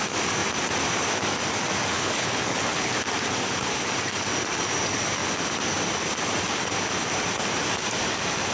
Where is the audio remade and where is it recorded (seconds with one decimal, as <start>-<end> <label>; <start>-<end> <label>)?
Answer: 0.0-1.9 recorded; 1.9-2.9 remade; 2.9-8.5 recorded